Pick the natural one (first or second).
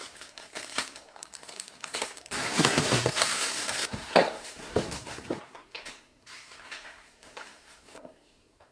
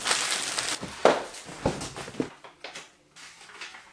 second